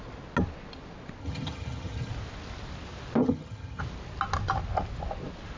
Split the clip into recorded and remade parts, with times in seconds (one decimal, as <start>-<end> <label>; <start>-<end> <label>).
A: 0.0-1.2 recorded; 1.2-2.1 remade; 2.1-3.2 recorded; 3.2-3.8 remade; 3.8-5.6 recorded